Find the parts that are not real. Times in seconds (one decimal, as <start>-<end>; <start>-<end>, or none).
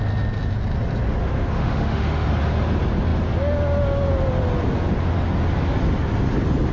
1.2-2.3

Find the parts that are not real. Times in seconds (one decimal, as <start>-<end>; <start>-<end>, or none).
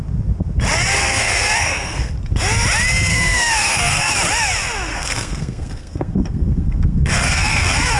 1.0-2.1; 3.1-4.1; 4.9-8.0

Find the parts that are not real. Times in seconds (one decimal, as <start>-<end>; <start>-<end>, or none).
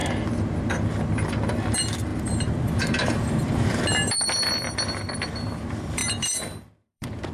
0.7-7.3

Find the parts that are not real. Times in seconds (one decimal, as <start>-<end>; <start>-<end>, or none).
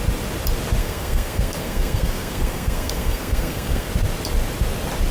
0.8-3.9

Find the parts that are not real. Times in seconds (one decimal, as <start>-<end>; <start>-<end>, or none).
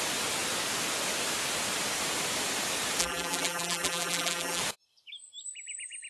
3.0-4.6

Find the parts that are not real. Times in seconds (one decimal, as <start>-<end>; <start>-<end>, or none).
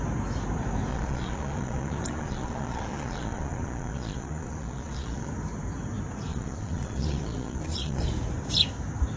0.9-5.3; 6.3-8.0